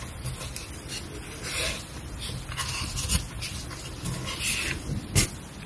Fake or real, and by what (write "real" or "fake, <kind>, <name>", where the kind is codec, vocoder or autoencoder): real